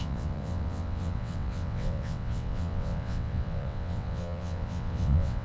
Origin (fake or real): fake